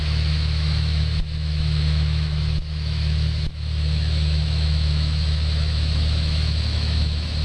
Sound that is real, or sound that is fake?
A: fake